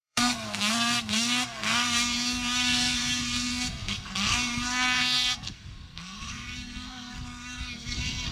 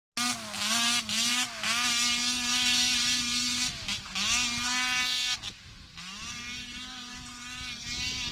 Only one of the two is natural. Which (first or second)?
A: second